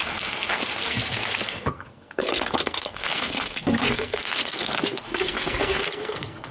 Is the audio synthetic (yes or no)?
yes